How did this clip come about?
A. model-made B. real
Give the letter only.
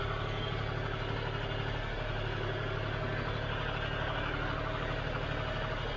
B